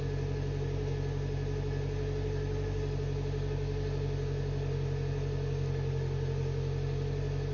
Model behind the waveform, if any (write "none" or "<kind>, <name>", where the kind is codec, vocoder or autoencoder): none